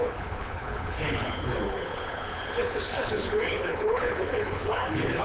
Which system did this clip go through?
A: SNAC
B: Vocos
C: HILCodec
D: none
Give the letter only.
C